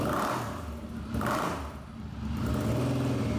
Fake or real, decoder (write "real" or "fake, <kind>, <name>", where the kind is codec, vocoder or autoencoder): real